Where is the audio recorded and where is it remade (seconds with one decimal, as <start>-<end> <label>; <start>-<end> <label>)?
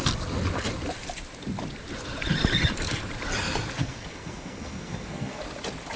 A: 0.0-3.8 recorded; 3.8-5.4 remade; 5.4-6.0 recorded